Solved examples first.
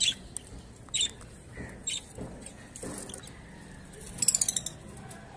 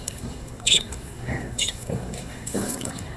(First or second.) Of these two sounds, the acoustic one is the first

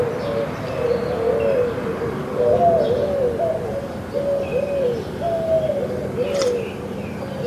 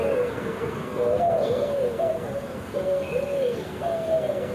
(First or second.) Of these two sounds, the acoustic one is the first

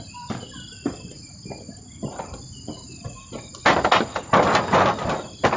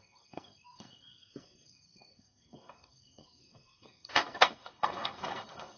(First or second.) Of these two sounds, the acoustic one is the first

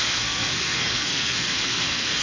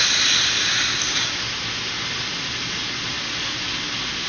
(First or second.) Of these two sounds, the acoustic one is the second